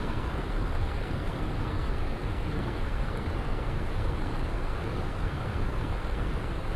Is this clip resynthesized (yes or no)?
yes